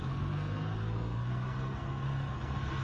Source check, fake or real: fake